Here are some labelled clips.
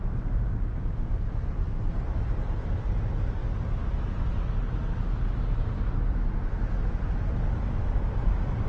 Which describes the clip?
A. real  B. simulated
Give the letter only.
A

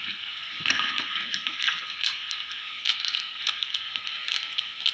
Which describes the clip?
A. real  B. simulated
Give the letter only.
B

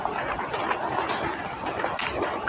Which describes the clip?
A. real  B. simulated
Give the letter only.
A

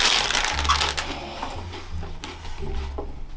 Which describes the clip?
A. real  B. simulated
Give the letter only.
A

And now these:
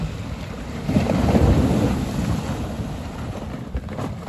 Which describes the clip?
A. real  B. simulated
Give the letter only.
B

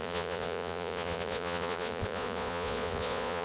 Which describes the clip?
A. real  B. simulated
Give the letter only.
B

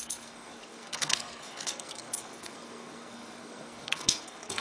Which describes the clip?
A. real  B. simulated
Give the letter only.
B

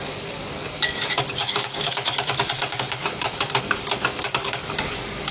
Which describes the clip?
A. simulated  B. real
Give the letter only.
A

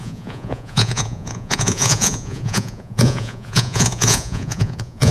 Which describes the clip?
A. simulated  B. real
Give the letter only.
A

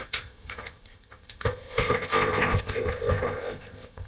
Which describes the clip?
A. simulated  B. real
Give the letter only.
A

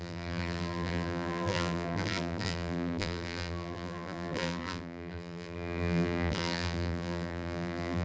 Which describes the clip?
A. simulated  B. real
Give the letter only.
A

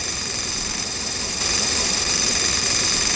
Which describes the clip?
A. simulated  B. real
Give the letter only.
A